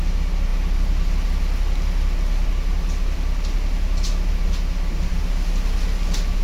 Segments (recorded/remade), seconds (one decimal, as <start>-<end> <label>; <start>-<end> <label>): 0.0-6.4 recorded